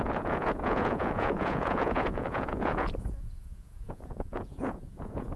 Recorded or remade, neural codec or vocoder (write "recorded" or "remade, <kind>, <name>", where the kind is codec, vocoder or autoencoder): remade, vocoder, Vocos